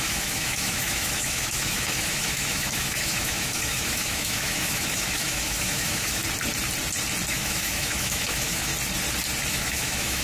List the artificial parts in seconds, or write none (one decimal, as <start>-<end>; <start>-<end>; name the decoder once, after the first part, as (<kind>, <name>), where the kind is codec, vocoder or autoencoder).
0.0-6.2 (autoencoder, DAC-VAE); 7.3-8.7; 9.5-10.2